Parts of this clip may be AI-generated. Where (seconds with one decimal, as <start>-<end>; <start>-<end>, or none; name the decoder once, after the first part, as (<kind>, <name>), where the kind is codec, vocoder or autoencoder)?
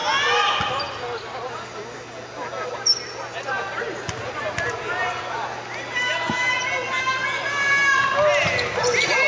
none